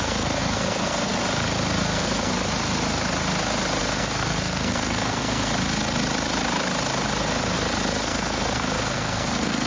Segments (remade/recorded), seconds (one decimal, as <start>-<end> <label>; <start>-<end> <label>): 0.0-1.1 remade; 1.1-1.8 recorded; 1.8-2.3 remade; 2.3-3.8 recorded; 3.8-5.5 remade; 5.5-8.0 recorded; 8.0-9.7 remade

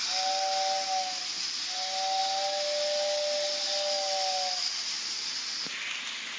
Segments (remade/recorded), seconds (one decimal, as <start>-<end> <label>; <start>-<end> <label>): 0.0-6.4 recorded

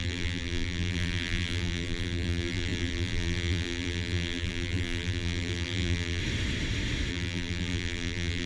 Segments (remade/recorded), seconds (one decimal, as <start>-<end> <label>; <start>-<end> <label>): 0.0-6.2 remade; 6.2-7.1 recorded; 7.1-8.5 remade

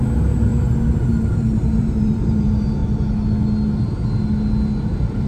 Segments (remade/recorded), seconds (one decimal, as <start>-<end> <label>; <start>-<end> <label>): 0.0-0.5 remade; 0.5-1.1 recorded; 1.1-2.8 remade; 2.8-4.8 recorded; 4.8-5.3 remade

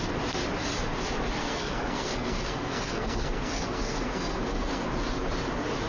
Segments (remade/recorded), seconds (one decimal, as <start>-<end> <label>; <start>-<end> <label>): 0.0-1.4 recorded; 1.4-4.9 remade; 4.9-5.9 recorded

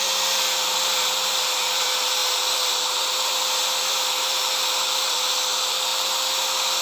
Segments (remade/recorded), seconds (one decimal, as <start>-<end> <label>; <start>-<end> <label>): 0.0-6.8 remade